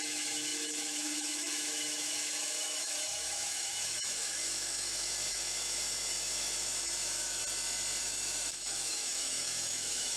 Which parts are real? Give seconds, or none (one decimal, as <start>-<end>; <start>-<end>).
7.4-8.0